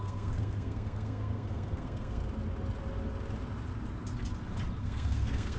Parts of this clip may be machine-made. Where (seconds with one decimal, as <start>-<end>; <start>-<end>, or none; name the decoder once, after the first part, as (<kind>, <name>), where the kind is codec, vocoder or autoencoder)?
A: 0.0-2.2 (codec, SNAC); 4.8-5.6